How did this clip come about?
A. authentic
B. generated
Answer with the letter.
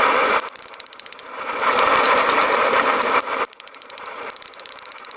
B